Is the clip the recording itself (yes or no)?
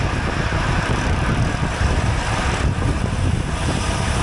no